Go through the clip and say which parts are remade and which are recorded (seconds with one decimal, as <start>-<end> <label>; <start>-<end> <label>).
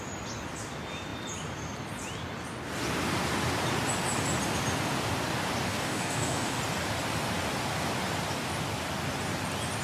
0.0-5.7 recorded; 5.7-6.6 remade; 6.6-9.8 recorded